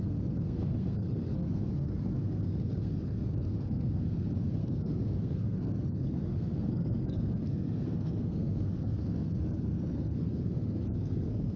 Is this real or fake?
fake